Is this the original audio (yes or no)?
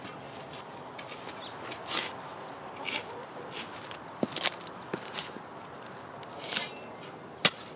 yes